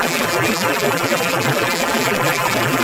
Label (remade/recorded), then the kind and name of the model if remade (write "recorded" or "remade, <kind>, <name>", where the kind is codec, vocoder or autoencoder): remade, vocoder, BigVGAN v2